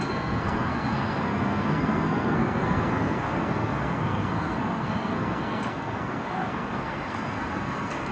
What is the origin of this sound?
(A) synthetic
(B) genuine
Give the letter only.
A